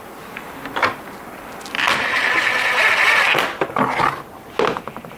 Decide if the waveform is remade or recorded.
recorded